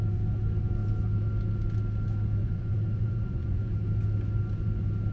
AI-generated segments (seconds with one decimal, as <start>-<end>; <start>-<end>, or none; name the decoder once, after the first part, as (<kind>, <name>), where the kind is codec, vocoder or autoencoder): 2.4-3.7 (vocoder, Vocos)